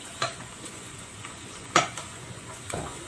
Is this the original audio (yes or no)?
no